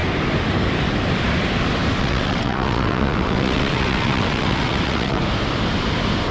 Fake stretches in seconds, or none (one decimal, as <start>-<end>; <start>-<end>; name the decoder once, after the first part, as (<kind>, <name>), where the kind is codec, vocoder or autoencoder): 2.0-5.2 (vocoder, WaveNeXt)